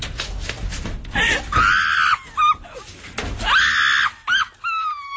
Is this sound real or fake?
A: real